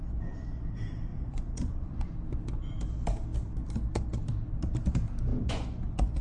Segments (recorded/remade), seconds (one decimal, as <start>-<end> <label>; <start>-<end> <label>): 0.0-1.1 recorded; 1.1-2.1 remade; 2.1-5.3 recorded; 5.3-6.2 remade